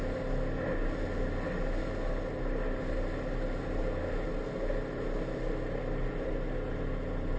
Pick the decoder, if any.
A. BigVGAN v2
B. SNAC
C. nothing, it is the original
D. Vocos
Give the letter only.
C